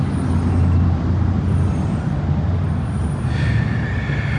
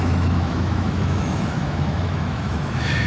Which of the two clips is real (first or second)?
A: first